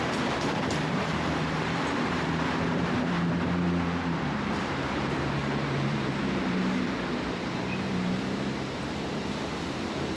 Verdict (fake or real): fake